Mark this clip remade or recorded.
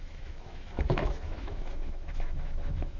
remade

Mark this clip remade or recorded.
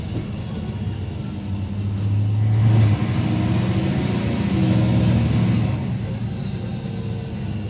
recorded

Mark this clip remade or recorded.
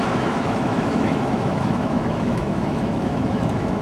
remade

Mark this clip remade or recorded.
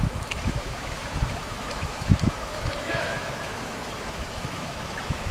remade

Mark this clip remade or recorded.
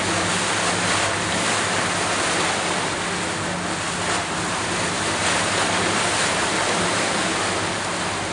recorded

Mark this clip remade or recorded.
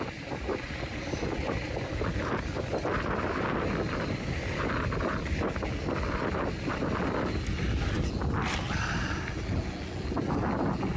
recorded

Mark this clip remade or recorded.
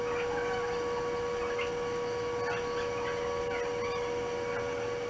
recorded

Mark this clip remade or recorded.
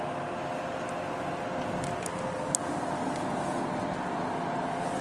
recorded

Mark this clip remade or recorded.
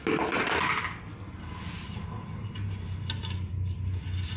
recorded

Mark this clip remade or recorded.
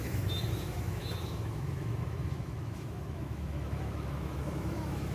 remade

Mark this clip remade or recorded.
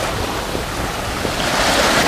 recorded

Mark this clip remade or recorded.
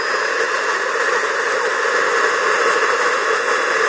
recorded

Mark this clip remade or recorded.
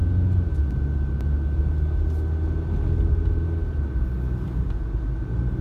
recorded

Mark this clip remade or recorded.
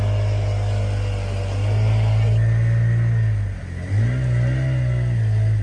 recorded